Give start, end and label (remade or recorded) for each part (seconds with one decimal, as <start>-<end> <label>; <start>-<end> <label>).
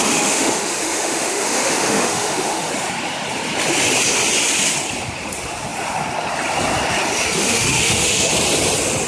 0.0-2.7 remade; 2.7-7.4 recorded; 7.4-8.3 remade; 8.3-9.1 recorded